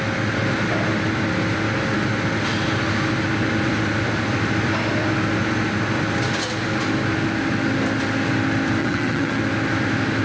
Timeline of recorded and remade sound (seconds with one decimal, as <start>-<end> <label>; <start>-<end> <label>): 0.0-8.8 recorded; 8.8-9.4 remade; 9.4-10.2 recorded